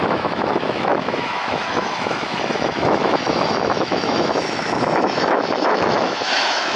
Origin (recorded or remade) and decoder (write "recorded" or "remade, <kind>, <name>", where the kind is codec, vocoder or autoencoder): remade, autoencoder, DAC-VAE